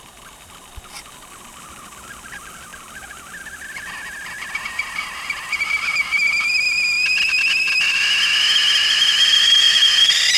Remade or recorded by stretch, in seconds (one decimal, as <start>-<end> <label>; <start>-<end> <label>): 0.0-10.4 recorded